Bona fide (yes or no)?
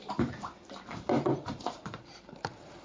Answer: no